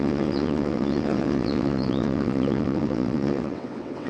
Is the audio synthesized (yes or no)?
yes